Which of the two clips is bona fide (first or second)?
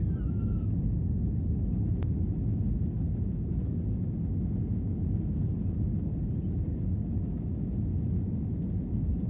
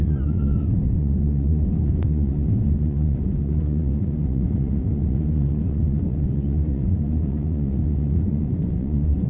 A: first